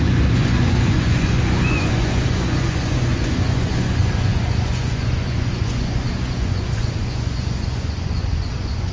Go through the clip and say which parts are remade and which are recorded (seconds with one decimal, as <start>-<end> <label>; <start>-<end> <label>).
0.0-8.9 remade